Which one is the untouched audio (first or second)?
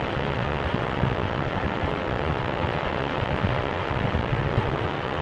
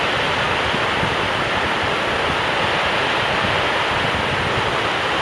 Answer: second